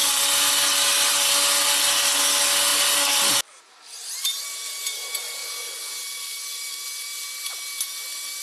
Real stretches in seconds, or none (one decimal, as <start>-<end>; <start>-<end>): 0.0-5.4; 5.9-8.4